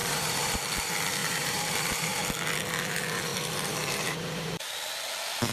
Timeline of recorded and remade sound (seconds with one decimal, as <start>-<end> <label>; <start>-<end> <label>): 0.0-0.6 remade; 0.6-1.2 recorded; 1.2-2.2 remade; 2.2-3.3 recorded; 3.3-4.7 remade; 4.7-5.5 recorded